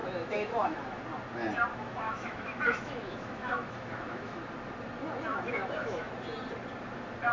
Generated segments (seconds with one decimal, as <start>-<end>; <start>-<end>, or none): 0.0-1.0; 1.7-4.4; 5.3-6.1